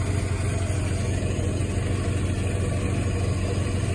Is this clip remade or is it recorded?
recorded